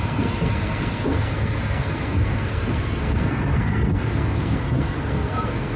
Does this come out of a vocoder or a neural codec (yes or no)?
yes